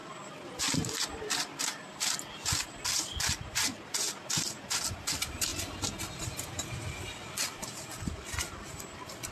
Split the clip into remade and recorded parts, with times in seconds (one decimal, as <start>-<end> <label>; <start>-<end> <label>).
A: 0.0-9.3 recorded

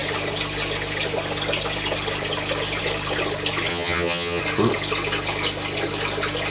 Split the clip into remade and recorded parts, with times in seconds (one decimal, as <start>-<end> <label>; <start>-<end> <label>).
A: 0.0-3.7 recorded; 3.7-4.4 remade; 4.4-6.5 recorded

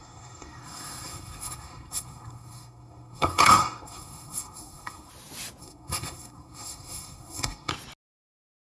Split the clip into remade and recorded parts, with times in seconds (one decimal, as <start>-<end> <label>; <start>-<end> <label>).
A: 0.0-5.1 remade; 5.1-5.6 recorded; 5.6-7.7 remade; 7.7-8.8 recorded

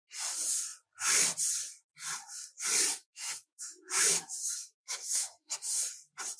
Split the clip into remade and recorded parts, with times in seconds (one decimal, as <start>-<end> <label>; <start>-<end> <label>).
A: 0.0-2.9 recorded; 2.9-5.5 remade; 5.5-6.4 recorded

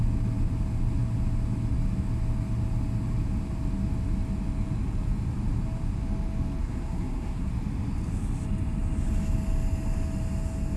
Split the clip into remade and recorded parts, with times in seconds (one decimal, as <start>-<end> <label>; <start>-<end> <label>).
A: 0.0-6.6 recorded; 6.6-7.5 remade; 7.5-10.8 recorded